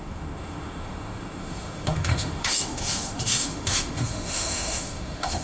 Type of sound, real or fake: fake